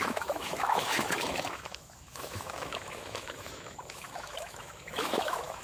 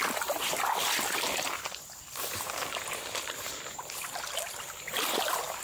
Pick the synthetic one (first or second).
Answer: first